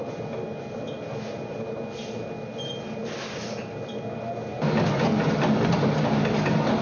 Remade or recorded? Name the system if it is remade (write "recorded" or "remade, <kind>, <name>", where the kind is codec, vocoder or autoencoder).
recorded